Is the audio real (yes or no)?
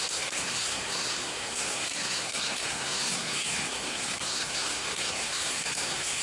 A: no